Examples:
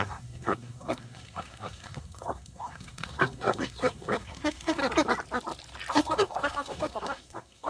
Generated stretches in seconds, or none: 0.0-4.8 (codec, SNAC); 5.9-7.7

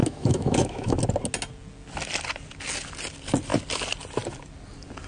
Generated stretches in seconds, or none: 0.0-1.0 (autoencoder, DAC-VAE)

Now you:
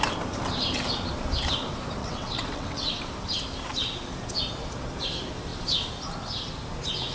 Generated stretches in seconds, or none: 2.0-3.0 (vocoder, WaveNeXt)

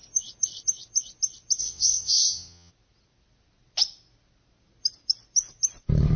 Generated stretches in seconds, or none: 1.6-2.7 (vocoder, WaveNeXt)

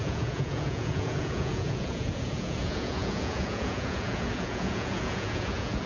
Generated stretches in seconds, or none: 0.0-5.9 (vocoder, Vocos)